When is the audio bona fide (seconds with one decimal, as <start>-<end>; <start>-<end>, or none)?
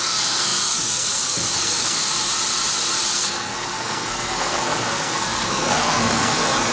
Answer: 2.3-3.1